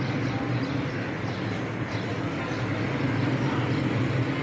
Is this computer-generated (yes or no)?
no